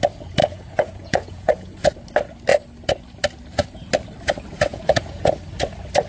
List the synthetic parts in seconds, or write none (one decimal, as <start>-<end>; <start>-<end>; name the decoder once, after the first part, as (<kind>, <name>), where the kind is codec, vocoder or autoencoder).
0.4-1.9 (vocoder, Vocos); 4.7-5.3